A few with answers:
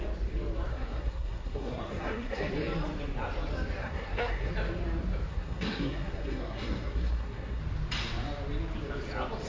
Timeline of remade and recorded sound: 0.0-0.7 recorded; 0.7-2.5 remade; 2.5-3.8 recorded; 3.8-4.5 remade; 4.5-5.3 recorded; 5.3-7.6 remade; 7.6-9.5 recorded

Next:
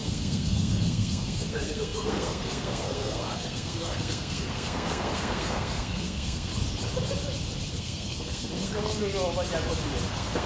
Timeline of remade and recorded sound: 0.0-6.5 remade; 6.5-7.7 recorded; 7.7-8.9 remade; 8.9-10.1 recorded; 10.1-10.5 remade

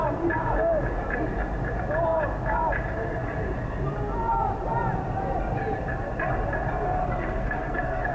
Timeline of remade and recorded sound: 0.0-7.0 recorded; 7.0-8.1 remade

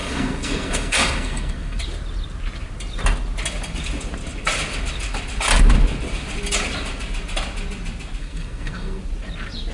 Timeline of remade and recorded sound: 0.0-1.8 remade; 1.8-8.2 recorded; 8.2-9.0 remade; 9.0-9.7 recorded